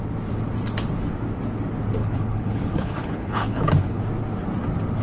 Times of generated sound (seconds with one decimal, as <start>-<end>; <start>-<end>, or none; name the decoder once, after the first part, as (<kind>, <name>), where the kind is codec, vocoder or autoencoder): 2.0-4.0 (codec, HILCodec)